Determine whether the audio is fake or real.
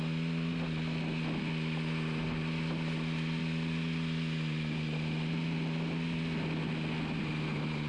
real